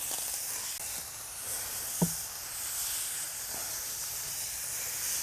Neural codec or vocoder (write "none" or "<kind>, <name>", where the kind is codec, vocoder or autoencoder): none